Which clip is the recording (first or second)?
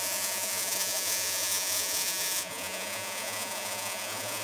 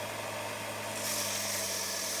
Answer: second